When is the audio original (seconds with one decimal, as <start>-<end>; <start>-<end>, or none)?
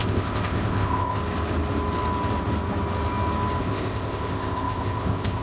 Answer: 1.2-3.6